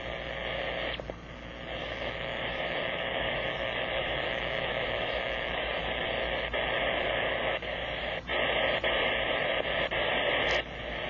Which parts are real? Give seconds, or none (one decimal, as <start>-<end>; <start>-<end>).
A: 0.0-1.8; 5.8-11.1